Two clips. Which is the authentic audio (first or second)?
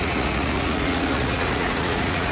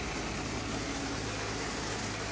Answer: second